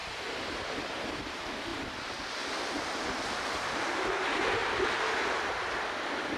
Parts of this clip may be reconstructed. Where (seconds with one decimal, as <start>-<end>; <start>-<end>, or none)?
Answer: 1.7-3.0; 4.6-5.6